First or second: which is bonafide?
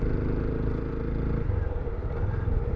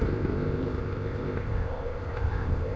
first